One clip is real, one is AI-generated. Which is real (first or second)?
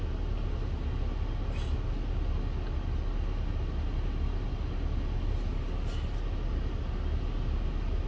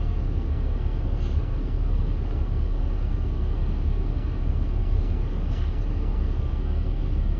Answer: first